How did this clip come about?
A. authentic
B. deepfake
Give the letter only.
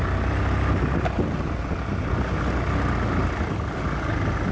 A